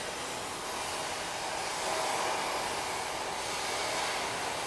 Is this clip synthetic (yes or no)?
no